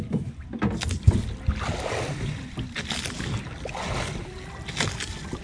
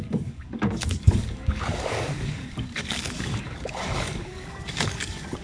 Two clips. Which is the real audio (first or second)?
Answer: first